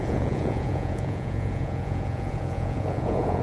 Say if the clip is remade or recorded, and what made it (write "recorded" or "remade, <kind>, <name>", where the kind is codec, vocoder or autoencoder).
remade, vocoder, Vocos